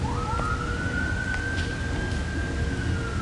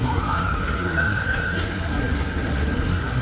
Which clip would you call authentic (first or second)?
first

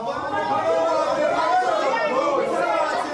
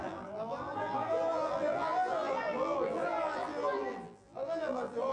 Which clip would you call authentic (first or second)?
first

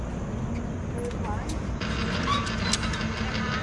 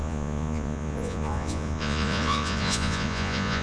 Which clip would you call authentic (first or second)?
first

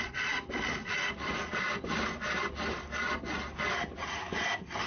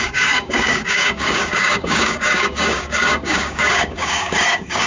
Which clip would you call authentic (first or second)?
first